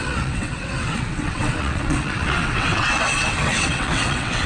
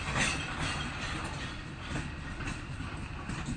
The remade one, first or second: first